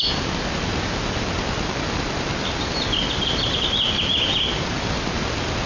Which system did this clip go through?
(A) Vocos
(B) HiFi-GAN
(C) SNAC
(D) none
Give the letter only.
D